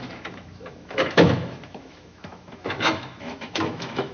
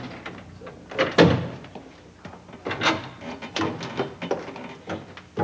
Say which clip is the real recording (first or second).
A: second